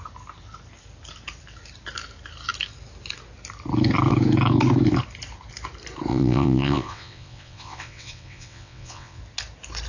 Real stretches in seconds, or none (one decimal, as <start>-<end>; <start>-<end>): 0.0-6.1; 9.2-9.9